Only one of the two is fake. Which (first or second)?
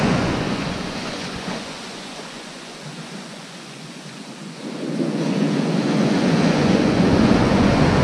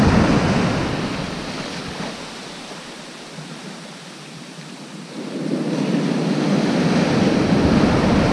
first